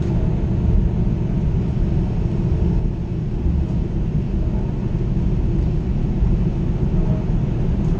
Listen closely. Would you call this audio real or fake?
real